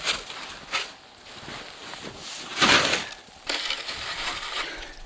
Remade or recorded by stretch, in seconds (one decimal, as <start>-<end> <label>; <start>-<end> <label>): 0.0-5.1 recorded